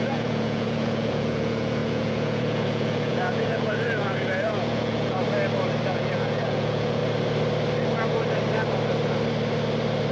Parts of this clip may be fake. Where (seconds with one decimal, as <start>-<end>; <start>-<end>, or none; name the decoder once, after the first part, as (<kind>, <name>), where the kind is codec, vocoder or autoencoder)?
0.0-5.2 (vocoder, Vocos); 5.9-7.0